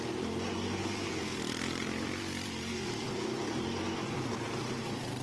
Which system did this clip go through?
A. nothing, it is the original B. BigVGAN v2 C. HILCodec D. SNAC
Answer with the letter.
B